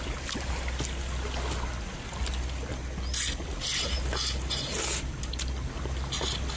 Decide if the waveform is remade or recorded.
recorded